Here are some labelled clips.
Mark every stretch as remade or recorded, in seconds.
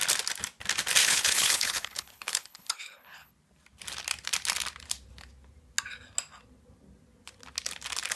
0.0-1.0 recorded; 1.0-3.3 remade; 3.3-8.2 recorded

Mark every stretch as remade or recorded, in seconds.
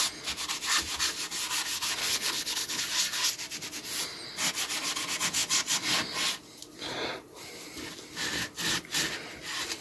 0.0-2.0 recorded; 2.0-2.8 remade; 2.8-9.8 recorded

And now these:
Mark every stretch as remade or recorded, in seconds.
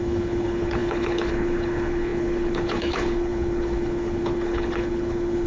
0.0-5.5 remade